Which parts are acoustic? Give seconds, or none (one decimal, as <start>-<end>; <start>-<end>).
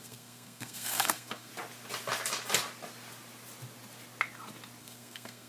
1.5-4.8